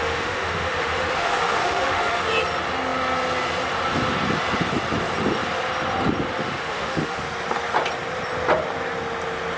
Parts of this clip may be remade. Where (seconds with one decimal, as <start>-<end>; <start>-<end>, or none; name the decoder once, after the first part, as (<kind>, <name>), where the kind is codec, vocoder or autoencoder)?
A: 0.0-2.2 (autoencoder, DAC-VAE); 6.4-7.2